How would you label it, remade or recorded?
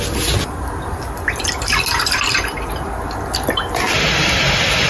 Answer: recorded